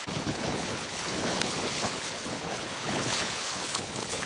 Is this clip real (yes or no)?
no